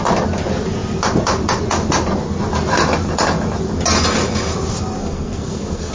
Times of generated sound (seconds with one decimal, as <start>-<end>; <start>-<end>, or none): 5.0-5.9